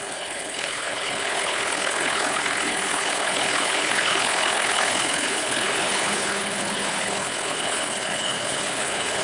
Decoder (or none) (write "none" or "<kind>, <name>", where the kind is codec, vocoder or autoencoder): codec, HILCodec